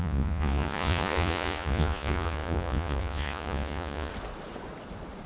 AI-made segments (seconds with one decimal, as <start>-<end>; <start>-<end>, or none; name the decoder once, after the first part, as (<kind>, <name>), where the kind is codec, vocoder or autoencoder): 0.0-4.1 (vocoder, Vocos)